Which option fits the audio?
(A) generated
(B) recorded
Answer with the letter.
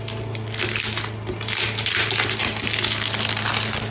B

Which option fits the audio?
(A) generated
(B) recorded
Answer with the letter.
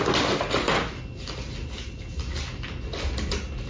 B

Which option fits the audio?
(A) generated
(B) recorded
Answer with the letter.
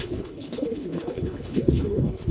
A